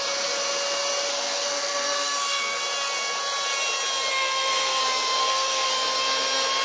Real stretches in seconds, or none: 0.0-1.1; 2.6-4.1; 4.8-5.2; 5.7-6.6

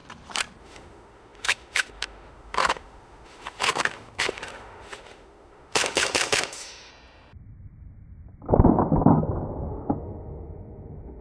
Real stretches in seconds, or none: 0.0-0.6; 6.9-9.7

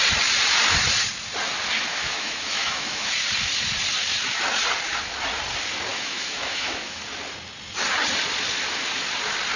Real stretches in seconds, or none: 0.0-1.9; 3.1-5.9; 7.0-9.6

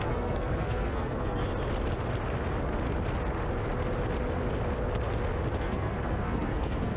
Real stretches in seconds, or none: 1.4-5.6

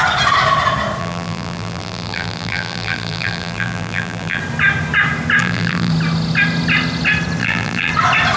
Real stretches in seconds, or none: 0.0-1.0; 4.4-5.4; 5.9-7.4; 7.9-8.4

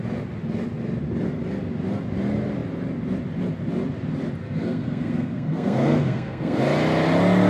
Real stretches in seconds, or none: 0.0-4.4; 6.6-7.5